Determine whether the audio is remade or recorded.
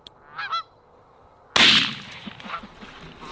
recorded